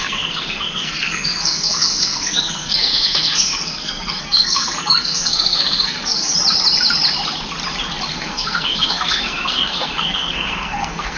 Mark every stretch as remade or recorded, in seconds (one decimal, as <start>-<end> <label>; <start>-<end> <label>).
0.0-6.3 remade; 6.3-8.1 recorded; 8.1-11.2 remade